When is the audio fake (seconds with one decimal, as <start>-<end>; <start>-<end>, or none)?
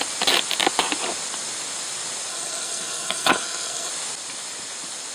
2.3-3.9